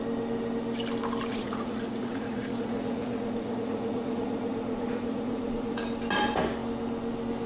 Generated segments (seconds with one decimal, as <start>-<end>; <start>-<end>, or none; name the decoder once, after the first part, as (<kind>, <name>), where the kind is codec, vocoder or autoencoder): 1.3-5.8 (vocoder, Vocos)